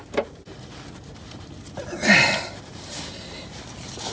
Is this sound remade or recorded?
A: recorded